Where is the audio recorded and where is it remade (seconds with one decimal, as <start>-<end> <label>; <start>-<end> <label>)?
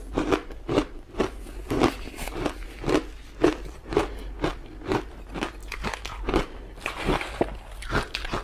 0.0-8.4 recorded